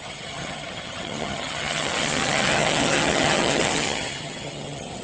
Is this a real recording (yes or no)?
no